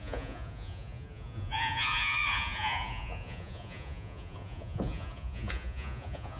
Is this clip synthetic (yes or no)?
yes